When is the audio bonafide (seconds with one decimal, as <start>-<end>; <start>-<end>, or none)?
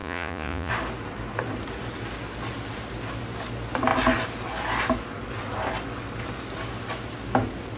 0.7-7.8